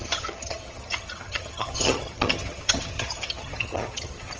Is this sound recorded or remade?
remade